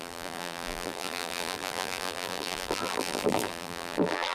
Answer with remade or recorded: remade